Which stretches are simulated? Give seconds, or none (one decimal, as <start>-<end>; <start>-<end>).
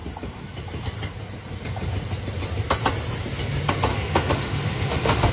3.9-5.3